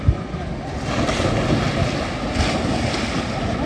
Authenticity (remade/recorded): recorded